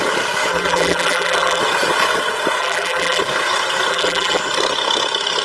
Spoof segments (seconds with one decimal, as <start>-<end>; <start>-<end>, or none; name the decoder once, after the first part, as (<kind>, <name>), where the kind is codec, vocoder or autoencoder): 0.5-1.6 (vocoder, BigVGAN v2); 2.6-3.2; 3.9-4.4